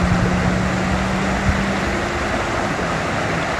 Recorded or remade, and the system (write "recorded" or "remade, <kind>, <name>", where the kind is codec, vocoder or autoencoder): recorded